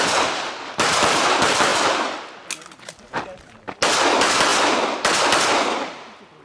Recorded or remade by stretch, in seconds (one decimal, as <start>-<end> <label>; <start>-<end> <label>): 0.0-6.4 recorded